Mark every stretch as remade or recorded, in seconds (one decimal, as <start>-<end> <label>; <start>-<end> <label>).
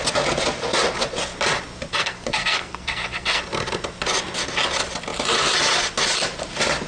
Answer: 0.0-1.9 recorded; 1.9-3.4 remade; 3.4-6.9 recorded